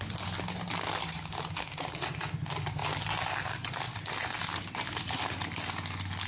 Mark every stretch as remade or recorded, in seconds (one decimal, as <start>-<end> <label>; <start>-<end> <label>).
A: 0.0-6.3 recorded